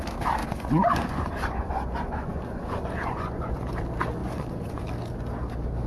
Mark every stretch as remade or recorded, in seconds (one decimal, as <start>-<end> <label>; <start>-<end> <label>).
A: 0.0-0.4 recorded; 0.4-3.7 remade; 3.7-4.2 recorded; 4.2-4.8 remade; 4.8-5.9 recorded